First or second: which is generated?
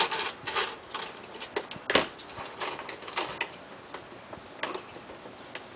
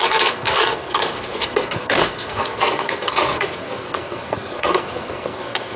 second